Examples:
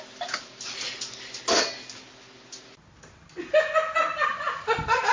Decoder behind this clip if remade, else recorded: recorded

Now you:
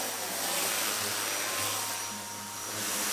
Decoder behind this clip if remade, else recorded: recorded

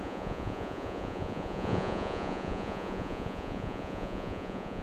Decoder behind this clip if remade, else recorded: remade, vocoder, Vocos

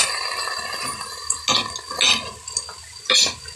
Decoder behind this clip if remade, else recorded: recorded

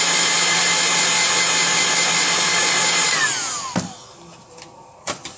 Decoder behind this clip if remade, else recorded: recorded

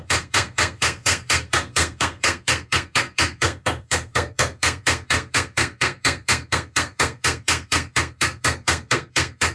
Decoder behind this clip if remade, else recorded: remade, codec, SNAC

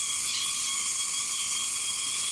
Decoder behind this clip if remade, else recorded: recorded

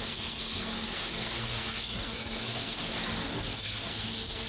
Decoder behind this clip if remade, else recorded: remade, codec, SNAC